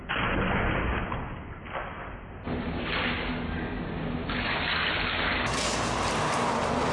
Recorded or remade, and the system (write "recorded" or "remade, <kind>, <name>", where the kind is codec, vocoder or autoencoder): recorded